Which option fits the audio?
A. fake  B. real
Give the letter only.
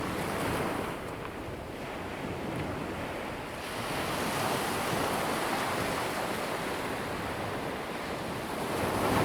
B